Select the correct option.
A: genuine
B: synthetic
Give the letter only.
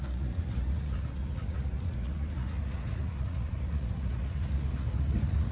B